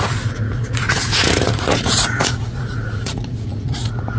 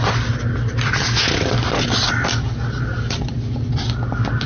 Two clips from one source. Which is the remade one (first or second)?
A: first